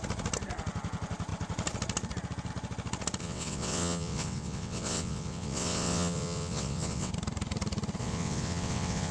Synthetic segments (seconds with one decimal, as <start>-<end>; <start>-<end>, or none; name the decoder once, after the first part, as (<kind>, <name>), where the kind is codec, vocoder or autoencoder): 3.2-7.1 (vocoder, WaveNeXt); 8.0-9.1